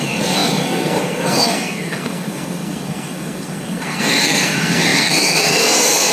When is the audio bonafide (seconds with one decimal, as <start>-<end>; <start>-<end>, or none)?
none